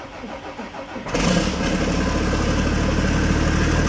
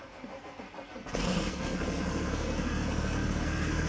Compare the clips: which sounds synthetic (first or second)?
second